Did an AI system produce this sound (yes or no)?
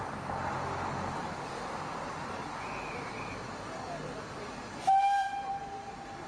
no